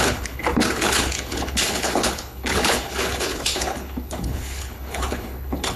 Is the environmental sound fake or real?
fake